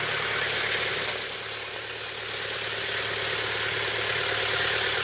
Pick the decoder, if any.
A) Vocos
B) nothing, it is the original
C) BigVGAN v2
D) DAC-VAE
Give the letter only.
B